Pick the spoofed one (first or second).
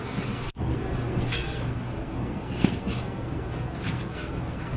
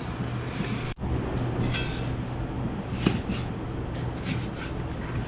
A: first